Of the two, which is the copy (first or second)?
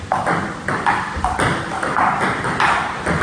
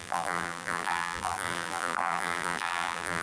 second